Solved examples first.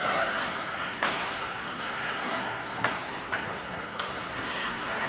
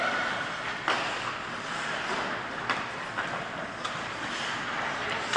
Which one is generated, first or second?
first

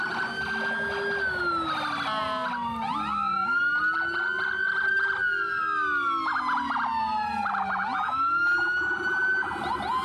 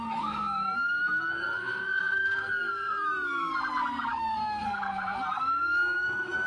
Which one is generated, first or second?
second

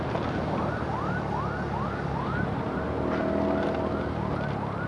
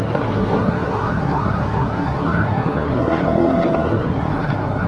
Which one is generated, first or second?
second